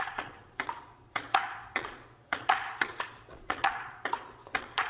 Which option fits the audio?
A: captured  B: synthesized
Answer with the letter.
B